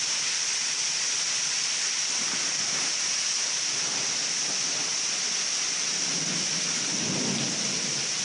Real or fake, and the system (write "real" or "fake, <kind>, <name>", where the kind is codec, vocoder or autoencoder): real